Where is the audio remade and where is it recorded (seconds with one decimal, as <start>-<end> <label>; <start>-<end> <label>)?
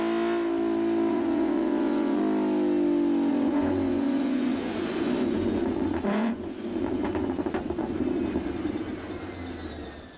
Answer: 0.0-1.1 recorded; 1.1-2.2 remade; 2.2-3.3 recorded; 3.3-8.0 remade; 8.0-10.2 recorded